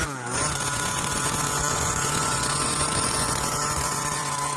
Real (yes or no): no